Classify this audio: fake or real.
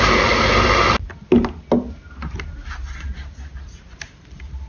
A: real